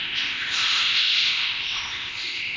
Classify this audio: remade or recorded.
remade